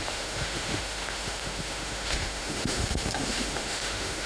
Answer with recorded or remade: remade